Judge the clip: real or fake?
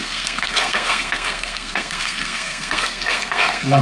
fake